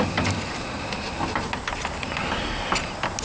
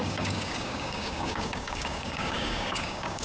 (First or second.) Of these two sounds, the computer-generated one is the second